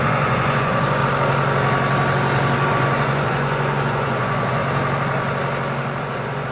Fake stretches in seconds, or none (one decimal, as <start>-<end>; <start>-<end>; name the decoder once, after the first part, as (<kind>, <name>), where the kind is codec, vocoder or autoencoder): 0.0-1.0 (vocoder, Vocos); 2.7-4.6; 6.0-6.5